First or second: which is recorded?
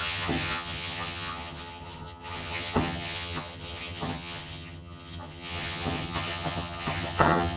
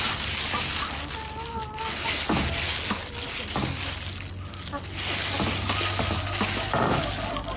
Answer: second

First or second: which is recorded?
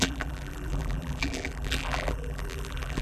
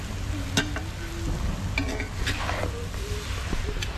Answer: second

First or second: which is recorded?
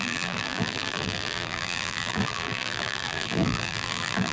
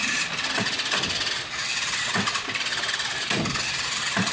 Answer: second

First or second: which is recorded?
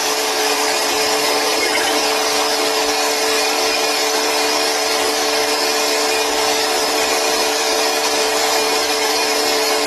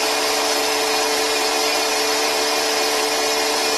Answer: second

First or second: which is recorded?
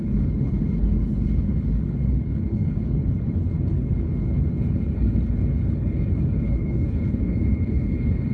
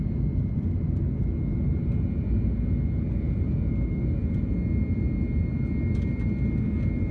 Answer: second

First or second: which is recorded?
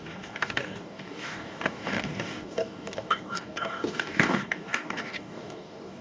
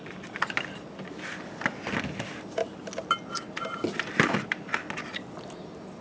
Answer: second